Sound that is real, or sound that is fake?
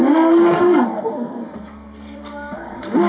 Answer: fake